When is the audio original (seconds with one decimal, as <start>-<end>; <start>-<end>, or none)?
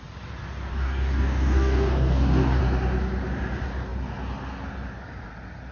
0.0-0.7; 2.6-5.7